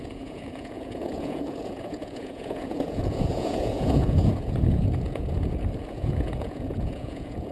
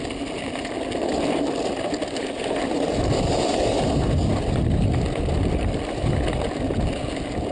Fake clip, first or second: first